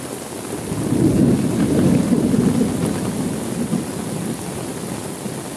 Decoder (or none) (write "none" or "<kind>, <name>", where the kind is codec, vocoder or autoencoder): none